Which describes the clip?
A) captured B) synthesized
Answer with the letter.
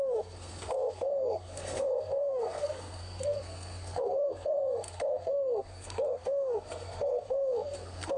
B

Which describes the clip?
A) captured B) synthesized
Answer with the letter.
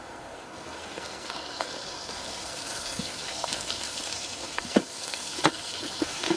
B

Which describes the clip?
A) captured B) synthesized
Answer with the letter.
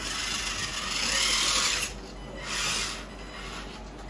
A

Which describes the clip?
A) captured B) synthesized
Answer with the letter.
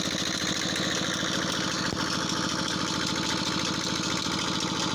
A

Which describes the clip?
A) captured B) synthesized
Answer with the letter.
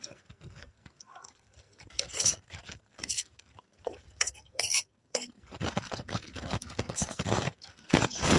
B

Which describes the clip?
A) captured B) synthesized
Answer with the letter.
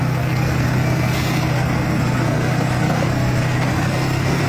B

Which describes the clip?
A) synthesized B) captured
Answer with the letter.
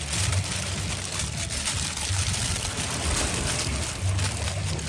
B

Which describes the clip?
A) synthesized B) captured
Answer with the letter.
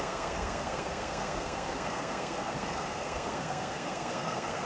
A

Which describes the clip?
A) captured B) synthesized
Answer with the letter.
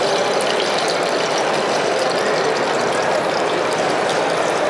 A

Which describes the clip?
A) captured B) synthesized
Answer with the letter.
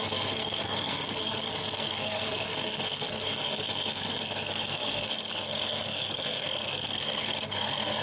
B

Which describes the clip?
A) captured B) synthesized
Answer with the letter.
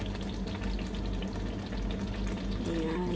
A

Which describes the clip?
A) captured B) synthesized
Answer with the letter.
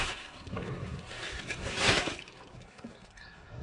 B